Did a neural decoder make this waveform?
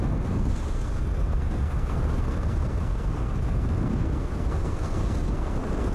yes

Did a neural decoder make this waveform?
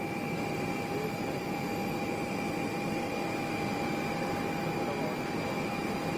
no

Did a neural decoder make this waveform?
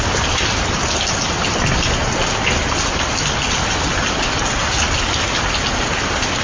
no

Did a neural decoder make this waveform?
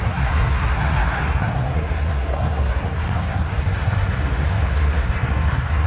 yes